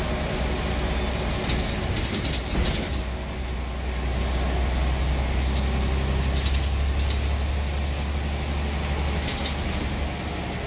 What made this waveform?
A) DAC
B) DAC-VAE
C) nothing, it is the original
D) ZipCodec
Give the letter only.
C